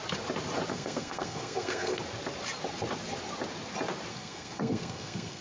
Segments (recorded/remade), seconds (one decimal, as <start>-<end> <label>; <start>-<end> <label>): 0.0-0.7 recorded; 0.7-2.0 remade; 2.0-4.1 recorded; 4.1-5.4 remade